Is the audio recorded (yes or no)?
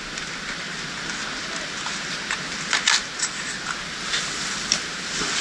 yes